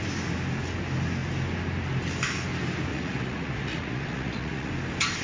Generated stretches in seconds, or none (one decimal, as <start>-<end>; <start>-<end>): 2.9-4.7

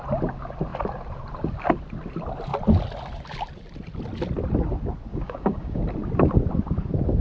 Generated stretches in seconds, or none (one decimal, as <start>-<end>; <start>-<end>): 5.1-5.8

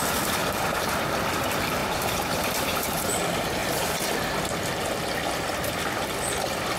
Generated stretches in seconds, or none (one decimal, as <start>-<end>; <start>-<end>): 0.4-1.0; 1.8-3.1

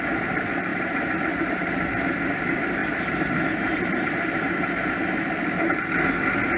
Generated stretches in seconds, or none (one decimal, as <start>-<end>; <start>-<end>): 0.7-2.4; 2.8-4.8

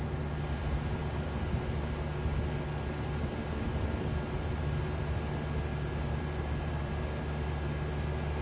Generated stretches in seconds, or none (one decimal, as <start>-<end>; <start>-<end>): 5.7-6.9

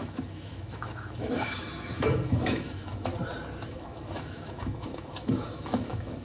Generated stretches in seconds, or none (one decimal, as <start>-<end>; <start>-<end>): 0.0-3.1; 3.7-6.2